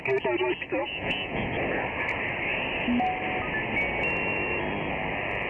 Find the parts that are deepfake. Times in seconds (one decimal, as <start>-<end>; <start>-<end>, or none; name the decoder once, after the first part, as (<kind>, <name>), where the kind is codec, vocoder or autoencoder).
0.8-1.4 (vocoder, Vocos)